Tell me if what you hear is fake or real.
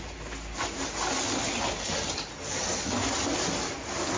real